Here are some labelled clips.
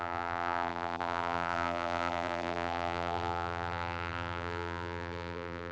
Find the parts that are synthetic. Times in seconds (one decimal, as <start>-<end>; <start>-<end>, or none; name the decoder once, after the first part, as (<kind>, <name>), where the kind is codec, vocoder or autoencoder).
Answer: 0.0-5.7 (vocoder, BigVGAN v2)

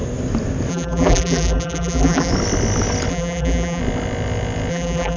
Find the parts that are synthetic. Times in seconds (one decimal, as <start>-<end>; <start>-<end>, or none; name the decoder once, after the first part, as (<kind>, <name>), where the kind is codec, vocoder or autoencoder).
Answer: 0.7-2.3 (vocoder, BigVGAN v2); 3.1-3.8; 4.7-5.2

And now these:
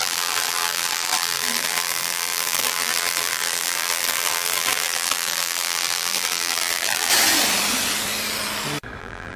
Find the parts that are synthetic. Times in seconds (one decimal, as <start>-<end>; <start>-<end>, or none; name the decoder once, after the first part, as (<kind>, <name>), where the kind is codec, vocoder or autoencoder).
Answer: 0.0-7.1 (vocoder, BigVGAN v2); 9.0-9.4